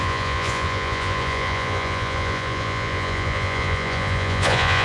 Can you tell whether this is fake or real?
fake